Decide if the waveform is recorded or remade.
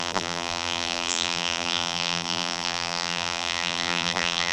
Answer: remade